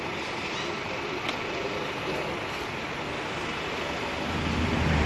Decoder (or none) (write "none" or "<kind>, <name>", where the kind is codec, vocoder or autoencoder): none